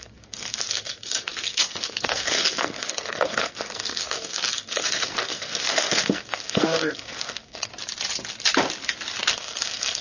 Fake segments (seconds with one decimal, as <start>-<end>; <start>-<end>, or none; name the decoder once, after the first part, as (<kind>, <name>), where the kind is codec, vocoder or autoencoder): 0.0-7.7 (codec, SNAC); 9.3-10.0